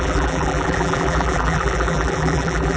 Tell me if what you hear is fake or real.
fake